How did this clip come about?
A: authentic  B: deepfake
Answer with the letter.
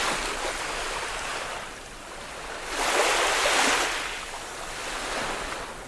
A